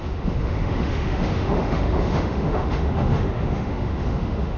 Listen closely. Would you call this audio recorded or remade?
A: remade